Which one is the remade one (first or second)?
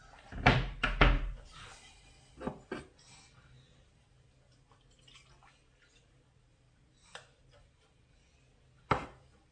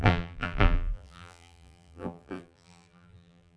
second